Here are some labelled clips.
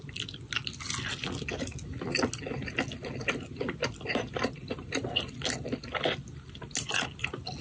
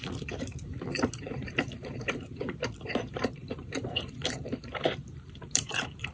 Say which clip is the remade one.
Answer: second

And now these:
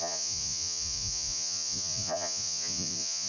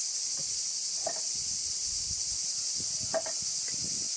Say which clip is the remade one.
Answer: first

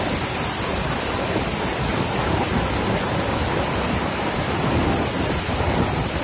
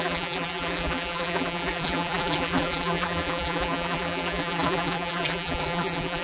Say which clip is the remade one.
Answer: second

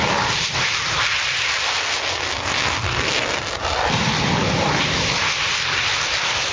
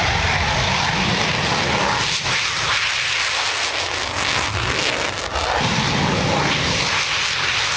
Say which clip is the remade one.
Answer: first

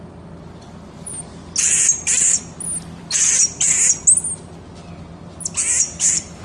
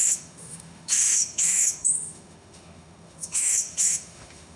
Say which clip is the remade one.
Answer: second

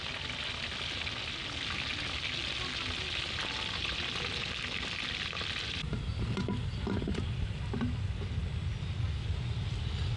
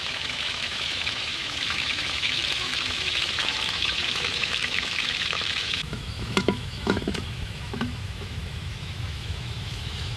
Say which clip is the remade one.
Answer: second